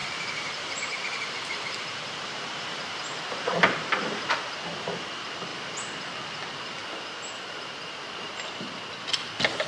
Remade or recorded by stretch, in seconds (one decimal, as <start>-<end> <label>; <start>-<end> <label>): 0.0-4.3 remade; 4.3-9.7 recorded